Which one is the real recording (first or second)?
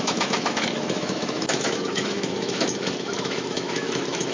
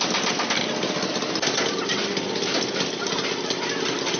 second